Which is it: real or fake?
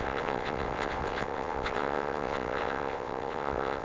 fake